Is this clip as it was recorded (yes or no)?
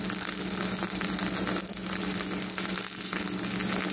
yes